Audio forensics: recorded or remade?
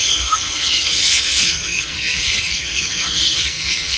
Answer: remade